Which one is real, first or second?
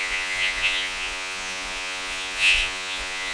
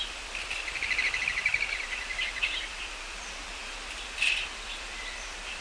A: second